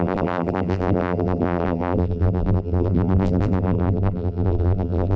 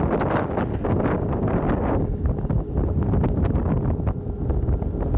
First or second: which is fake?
first